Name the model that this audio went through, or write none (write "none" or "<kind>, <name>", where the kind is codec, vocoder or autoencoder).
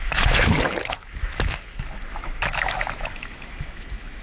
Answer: autoencoder, DAC-VAE